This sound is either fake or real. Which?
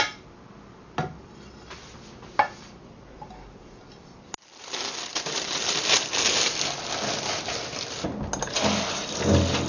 real